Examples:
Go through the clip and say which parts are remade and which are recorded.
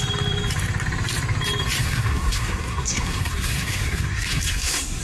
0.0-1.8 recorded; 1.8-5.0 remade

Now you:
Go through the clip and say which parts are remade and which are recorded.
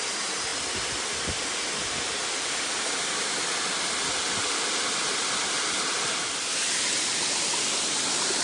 0.0-8.4 recorded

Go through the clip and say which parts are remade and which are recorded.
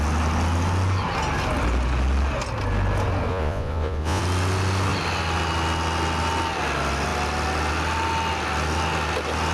0.0-3.3 recorded; 3.3-4.2 remade; 4.2-9.5 recorded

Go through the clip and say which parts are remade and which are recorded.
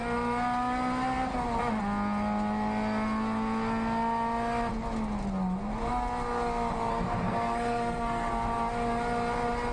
0.0-6.9 recorded; 6.9-8.3 remade; 8.3-9.7 recorded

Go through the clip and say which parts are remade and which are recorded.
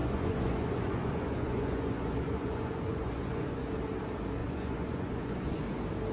0.0-3.7 remade; 3.7-4.4 recorded; 4.4-5.6 remade; 5.6-6.1 recorded